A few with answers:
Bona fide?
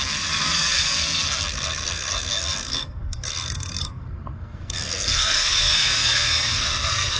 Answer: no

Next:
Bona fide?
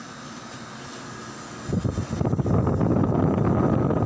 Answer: yes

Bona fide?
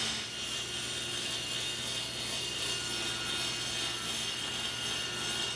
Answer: yes